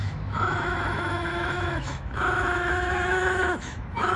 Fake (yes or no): yes